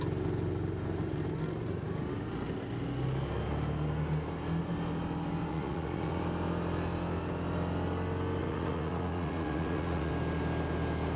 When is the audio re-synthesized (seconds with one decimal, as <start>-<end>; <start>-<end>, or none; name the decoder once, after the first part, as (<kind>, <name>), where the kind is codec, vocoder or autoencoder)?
5.5-6.2 (vocoder, Vocos); 8.4-10.1